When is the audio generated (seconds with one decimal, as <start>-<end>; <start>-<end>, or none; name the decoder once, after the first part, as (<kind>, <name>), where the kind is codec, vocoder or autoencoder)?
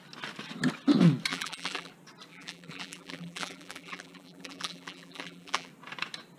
1.3-1.9 (vocoder, BigVGAN v2); 2.3-5.7